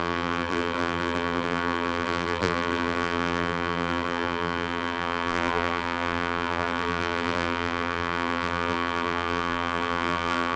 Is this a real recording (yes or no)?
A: no